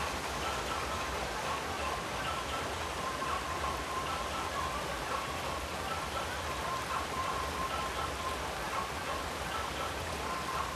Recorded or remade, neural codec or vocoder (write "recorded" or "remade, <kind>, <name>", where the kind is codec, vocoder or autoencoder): recorded